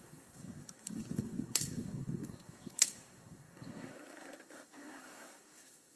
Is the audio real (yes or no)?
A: no